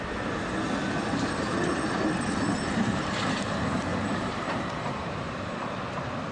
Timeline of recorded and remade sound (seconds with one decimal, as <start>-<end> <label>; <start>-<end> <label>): 0.0-3.9 recorded; 3.9-5.3 remade; 5.3-6.3 recorded